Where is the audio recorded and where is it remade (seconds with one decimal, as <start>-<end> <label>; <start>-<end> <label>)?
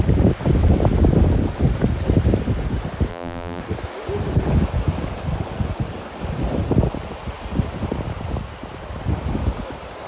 0.0-3.1 recorded; 3.1-3.6 remade; 3.6-10.1 recorded